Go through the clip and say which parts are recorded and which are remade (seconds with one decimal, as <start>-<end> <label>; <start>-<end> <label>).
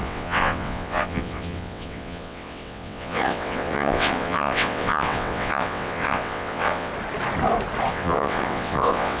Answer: 0.0-6.9 remade; 6.9-7.9 recorded; 7.9-9.2 remade